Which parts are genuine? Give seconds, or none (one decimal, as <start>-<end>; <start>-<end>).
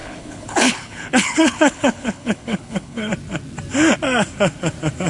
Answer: 3.1-5.1